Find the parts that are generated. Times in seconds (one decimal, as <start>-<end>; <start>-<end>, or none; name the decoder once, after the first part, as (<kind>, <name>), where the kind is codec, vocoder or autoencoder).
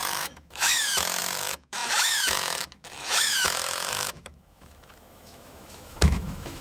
0.0-6.6 (autoencoder, DAC-VAE)